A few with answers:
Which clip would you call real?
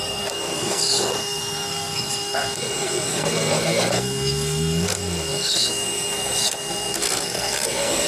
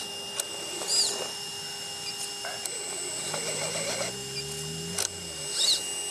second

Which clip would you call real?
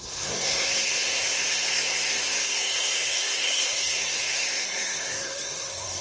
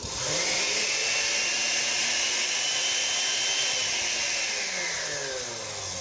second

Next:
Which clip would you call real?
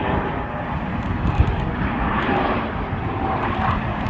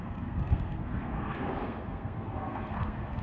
first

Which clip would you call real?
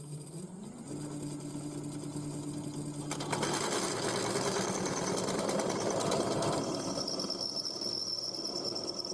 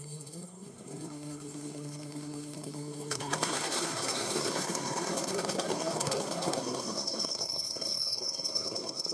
first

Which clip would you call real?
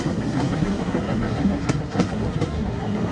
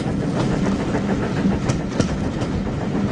second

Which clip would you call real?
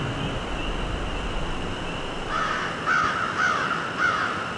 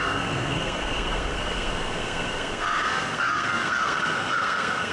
first